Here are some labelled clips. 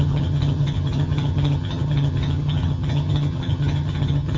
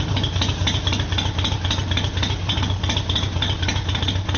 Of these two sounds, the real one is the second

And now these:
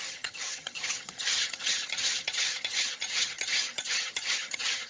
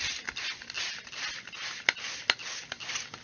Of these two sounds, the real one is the second